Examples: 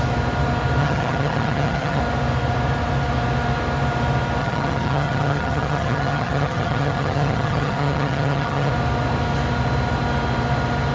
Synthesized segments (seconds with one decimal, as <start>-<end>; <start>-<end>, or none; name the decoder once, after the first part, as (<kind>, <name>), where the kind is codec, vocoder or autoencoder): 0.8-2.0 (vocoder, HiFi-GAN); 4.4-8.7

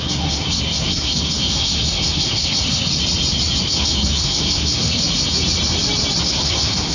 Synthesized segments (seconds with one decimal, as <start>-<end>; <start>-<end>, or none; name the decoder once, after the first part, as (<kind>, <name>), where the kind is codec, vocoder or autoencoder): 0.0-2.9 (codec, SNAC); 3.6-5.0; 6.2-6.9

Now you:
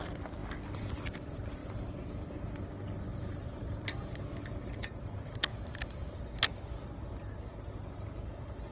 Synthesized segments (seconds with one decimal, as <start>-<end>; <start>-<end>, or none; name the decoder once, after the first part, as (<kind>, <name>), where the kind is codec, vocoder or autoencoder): 1.6-2.7 (vocoder, BigVGAN v2); 3.1-4.1; 5.5-6.2

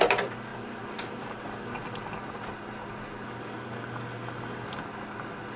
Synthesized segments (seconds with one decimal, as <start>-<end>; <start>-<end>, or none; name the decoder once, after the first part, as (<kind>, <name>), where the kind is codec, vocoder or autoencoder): none